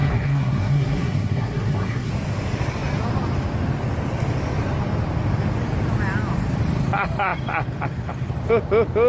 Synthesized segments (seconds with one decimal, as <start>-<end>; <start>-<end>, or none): 0.0-2.1